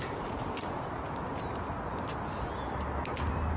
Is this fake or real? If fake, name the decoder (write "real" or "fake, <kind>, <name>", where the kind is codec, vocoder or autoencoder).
real